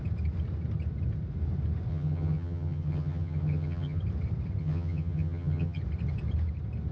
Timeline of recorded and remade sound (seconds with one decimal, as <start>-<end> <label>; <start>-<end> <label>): 0.0-1.9 recorded; 1.9-4.0 remade; 4.0-4.6 recorded; 4.6-5.8 remade; 5.8-6.9 recorded